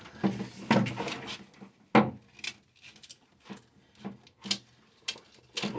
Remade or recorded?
recorded